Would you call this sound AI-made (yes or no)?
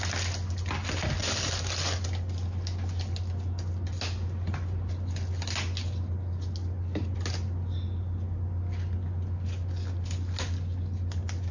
no